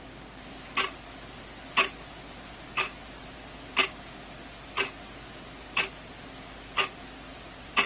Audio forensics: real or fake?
real